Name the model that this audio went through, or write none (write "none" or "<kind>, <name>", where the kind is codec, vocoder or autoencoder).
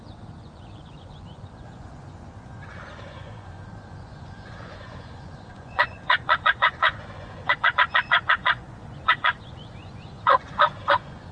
vocoder, Vocos